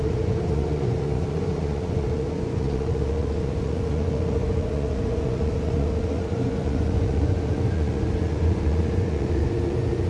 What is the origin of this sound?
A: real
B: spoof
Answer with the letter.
B